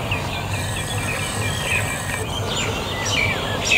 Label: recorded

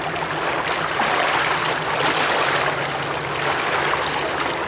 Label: recorded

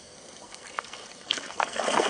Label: remade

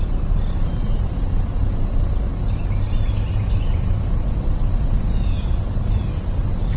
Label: recorded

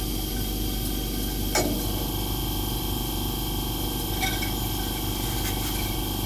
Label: recorded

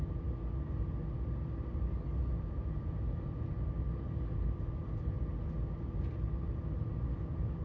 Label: recorded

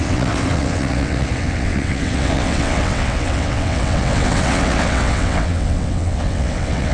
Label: remade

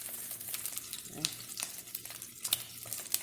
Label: recorded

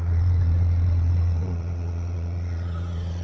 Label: remade